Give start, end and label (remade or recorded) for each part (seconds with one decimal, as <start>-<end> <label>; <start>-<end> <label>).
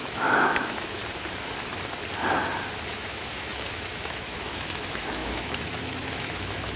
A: 0.0-1.0 remade; 1.0-2.9 recorded; 2.9-6.8 remade